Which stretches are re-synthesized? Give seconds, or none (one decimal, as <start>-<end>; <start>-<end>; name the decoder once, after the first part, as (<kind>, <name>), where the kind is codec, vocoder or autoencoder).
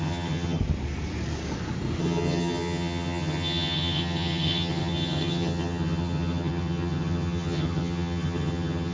0.0-0.6 (vocoder, HiFi-GAN); 2.0-8.9